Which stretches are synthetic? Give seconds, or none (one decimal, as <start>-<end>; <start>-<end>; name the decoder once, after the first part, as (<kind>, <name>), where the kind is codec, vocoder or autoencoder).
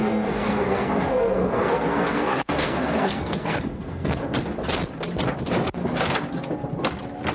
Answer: 0.0-4.4 (codec, SNAC)